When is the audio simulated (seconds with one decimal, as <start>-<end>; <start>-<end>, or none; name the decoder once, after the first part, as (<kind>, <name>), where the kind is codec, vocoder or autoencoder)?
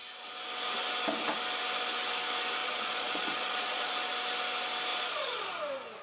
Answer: 2.6-3.9 (vocoder, Vocos); 4.9-5.6